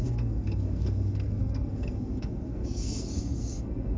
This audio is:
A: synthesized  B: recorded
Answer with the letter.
A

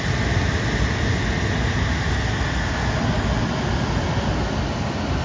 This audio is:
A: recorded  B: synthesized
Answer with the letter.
A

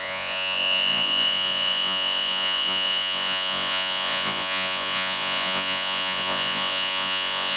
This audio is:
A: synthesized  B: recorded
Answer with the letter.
A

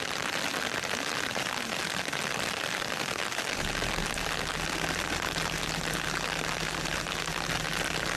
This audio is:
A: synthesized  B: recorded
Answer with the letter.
B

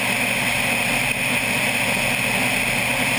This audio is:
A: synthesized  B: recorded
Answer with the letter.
B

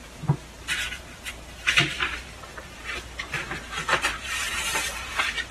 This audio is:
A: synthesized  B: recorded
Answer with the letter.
A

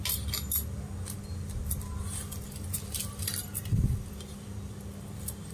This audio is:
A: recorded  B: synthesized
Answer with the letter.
A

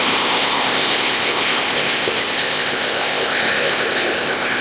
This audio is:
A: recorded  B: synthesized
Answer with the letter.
B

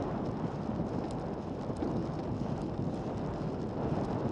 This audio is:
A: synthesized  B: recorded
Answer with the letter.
B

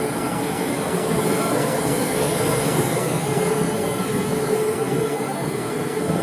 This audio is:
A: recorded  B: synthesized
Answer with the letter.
B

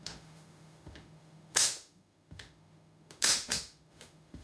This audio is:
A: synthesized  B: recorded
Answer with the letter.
A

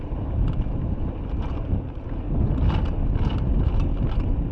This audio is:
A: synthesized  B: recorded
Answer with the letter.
B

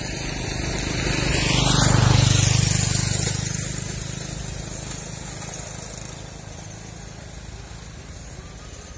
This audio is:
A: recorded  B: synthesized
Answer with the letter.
A